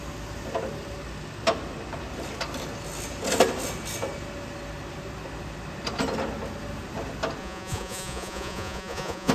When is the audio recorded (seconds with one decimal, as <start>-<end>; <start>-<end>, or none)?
0.0-7.4